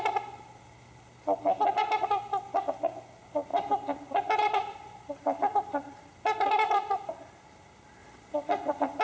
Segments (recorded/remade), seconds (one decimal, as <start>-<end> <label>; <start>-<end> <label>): 0.0-3.5 recorded; 3.5-7.1 remade; 7.1-8.0 recorded; 8.0-9.0 remade